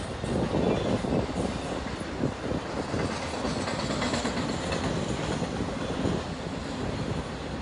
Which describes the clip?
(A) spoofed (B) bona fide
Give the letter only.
B